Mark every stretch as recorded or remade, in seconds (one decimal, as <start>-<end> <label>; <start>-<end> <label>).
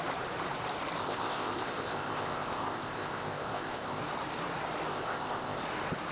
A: 0.0-1.0 recorded; 1.0-4.0 remade; 4.0-4.9 recorded; 4.9-5.6 remade; 5.6-6.1 recorded